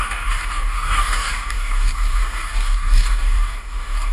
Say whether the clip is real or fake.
fake